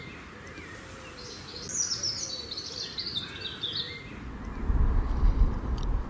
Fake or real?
real